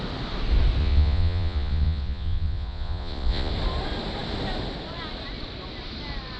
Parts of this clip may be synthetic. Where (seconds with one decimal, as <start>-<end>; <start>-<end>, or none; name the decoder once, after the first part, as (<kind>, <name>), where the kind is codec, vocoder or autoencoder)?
0.8-3.5 (vocoder, Vocos)